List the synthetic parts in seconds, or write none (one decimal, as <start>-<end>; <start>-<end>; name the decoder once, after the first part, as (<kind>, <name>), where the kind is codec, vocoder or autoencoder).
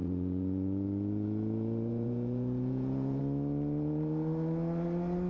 0.0-3.2 (vocoder, Vocos)